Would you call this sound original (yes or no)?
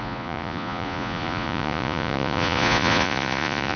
no